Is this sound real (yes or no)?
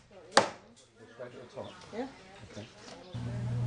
yes